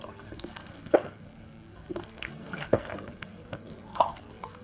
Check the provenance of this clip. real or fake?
fake